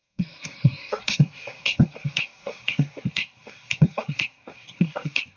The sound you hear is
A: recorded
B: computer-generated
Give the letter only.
B